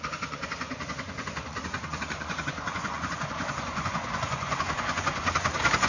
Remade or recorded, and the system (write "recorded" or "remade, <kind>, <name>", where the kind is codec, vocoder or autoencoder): remade, vocoder, Vocos